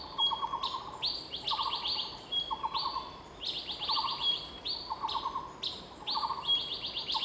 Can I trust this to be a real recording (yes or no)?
yes